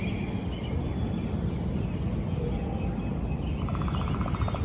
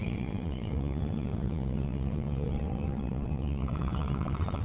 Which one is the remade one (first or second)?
second